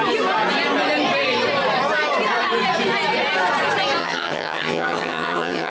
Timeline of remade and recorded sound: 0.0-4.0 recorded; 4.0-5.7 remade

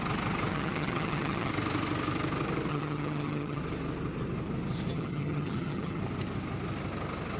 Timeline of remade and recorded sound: 0.0-0.5 recorded; 0.5-1.5 remade; 1.5-2.7 recorded; 2.7-3.6 remade; 3.6-4.9 recorded; 4.9-6.0 remade; 6.0-7.4 recorded

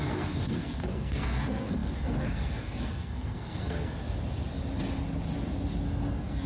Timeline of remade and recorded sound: 0.0-4.0 remade; 4.0-6.1 recorded; 6.1-6.5 remade

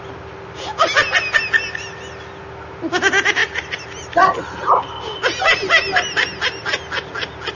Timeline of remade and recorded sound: 0.0-7.5 recorded

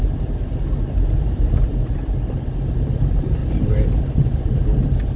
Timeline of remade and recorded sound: 0.0-3.4 recorded; 3.4-4.5 remade; 4.5-5.2 recorded

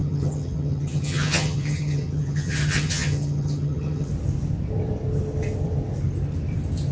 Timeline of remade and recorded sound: 0.0-4.1 remade; 4.1-6.9 recorded